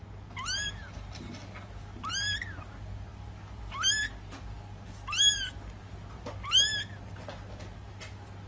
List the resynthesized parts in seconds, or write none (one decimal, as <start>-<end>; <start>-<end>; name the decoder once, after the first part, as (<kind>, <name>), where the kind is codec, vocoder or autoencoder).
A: none